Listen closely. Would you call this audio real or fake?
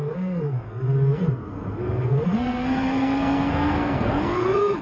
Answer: fake